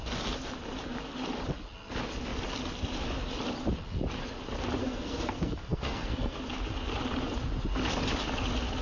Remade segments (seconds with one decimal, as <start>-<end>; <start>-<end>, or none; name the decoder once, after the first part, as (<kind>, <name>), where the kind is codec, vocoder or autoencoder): 4.8-6.4 (codec, SNAC)